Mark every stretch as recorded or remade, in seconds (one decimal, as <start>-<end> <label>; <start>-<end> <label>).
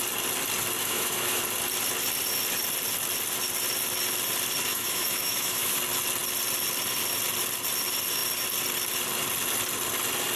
0.0-0.8 recorded; 0.8-1.4 remade; 1.4-4.7 recorded; 4.7-5.8 remade; 5.8-10.4 recorded